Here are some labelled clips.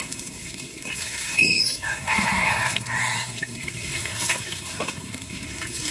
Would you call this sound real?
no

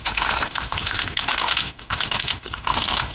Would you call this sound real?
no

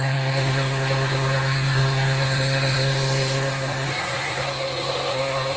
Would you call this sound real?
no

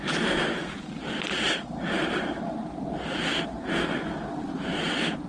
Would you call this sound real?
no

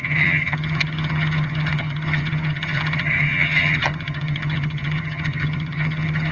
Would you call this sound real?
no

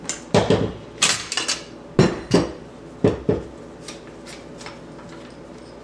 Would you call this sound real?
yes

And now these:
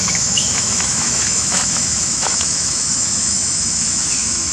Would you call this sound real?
no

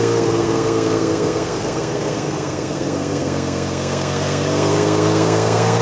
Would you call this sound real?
no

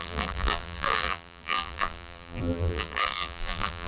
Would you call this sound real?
no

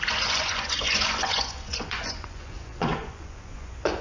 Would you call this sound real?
no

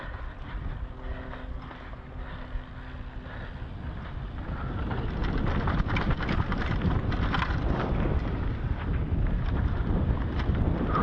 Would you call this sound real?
yes